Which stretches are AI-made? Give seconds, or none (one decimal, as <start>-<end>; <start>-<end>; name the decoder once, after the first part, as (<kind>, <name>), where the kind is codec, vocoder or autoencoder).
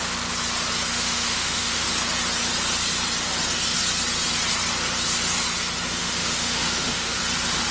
0.9-1.9 (autoencoder, DAC-VAE); 6.0-7.2